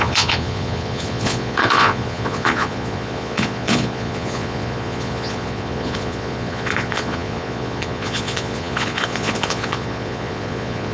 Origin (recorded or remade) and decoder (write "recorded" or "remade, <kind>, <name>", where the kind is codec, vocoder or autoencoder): remade, vocoder, Vocos